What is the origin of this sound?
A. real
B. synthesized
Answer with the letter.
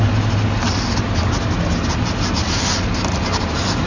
A